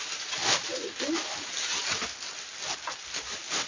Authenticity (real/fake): real